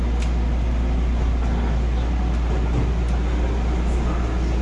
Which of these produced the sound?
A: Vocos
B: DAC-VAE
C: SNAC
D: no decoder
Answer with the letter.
D